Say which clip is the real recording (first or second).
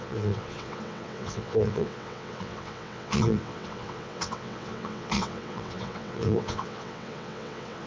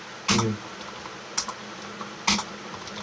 second